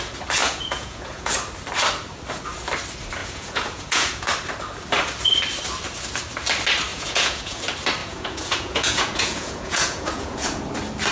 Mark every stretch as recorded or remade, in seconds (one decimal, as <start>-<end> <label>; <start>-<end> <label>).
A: 0.0-0.4 recorded; 0.4-1.3 remade; 1.3-3.2 recorded; 3.2-4.3 remade; 4.3-6.9 recorded; 6.9-7.6 remade; 7.6-8.0 recorded; 8.0-10.6 remade; 10.6-11.1 recorded